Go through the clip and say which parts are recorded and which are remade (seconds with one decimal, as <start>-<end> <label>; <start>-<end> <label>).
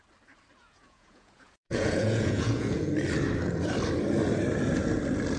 0.0-0.6 recorded; 0.6-2.9 remade; 2.9-5.4 recorded